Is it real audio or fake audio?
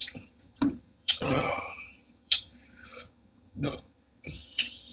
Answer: fake